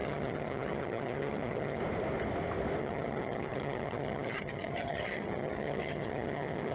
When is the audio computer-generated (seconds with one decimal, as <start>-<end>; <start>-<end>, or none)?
0.0-1.8; 2.8-6.7